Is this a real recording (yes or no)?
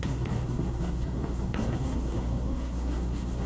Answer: no